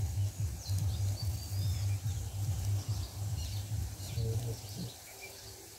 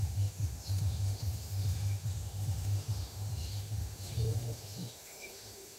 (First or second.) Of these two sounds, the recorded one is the first